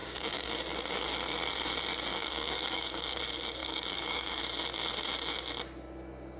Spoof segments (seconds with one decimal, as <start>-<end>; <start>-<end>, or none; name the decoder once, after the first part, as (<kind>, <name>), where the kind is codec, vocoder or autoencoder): 0.0-0.5 (codec, DAC); 2.1-3.2; 3.6-4.4